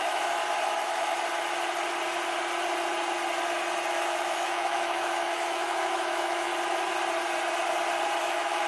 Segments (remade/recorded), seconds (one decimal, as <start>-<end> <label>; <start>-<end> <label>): 0.0-0.4 remade; 0.4-3.9 recorded; 3.9-6.5 remade; 6.5-8.2 recorded; 8.2-8.7 remade